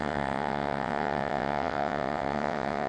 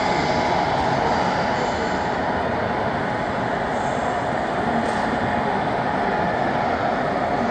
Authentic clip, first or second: second